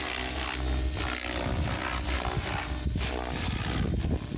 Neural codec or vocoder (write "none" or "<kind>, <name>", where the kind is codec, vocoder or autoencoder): none